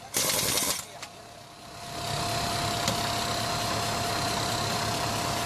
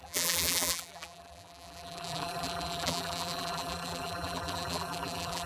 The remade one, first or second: second